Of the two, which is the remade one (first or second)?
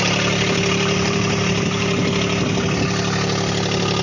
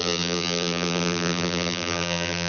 second